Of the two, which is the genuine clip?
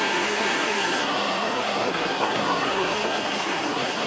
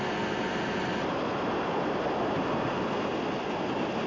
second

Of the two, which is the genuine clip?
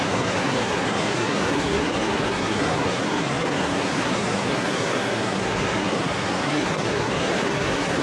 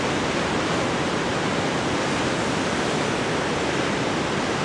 second